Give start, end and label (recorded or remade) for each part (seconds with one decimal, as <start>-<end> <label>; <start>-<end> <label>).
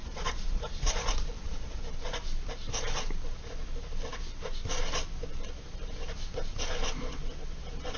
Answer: 0.0-1.8 remade; 1.8-8.0 recorded